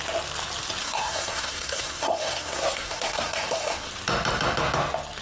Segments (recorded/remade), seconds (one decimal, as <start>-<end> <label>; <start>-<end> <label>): 0.0-0.8 recorded; 0.8-3.9 remade; 3.9-5.2 recorded